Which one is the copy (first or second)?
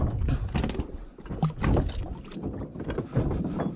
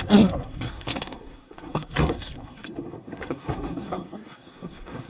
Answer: second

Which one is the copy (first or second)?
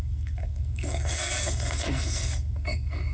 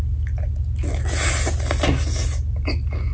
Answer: first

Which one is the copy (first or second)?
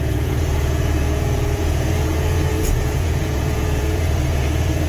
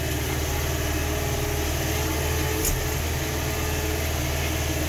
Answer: first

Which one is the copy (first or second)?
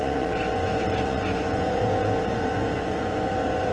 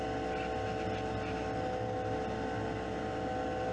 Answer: first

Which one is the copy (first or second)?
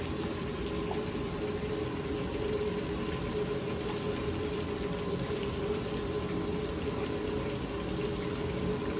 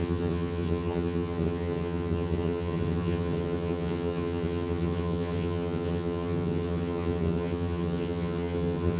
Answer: second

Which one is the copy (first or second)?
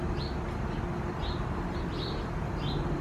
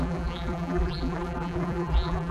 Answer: second